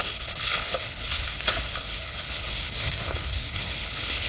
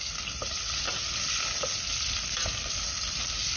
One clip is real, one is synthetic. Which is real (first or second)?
second